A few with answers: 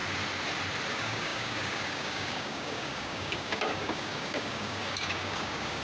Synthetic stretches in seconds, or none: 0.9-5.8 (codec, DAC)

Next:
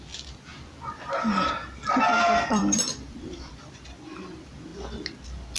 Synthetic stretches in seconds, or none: 2.1-3.5 (vocoder, BigVGAN v2)

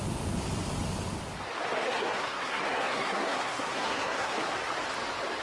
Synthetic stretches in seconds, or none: 1.8-4.5 (codec, SNAC)

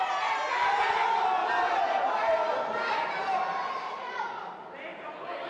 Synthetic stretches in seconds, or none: 1.4-4.5 (vocoder, BigVGAN v2); 4.9-5.5

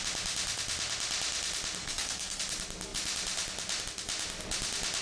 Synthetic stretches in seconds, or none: 1.8-2.4 (codec, SNAC)

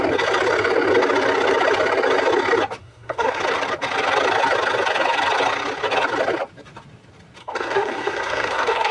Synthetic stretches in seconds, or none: 2.8-3.4 (codec, SNAC); 7.4-8.9

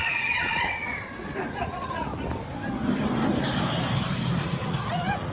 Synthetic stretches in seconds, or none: 0.0-0.8 (vocoder, Vocos); 1.5-2.1; 4.4-5.3

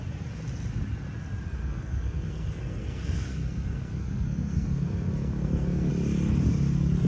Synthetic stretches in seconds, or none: 1.6-5.9 (codec, SNAC)